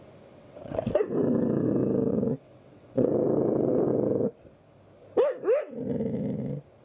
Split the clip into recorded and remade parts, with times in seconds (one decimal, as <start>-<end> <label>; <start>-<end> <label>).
0.0-0.4 recorded; 0.4-1.1 remade; 1.1-2.1 recorded; 2.1-3.1 remade; 3.1-6.8 recorded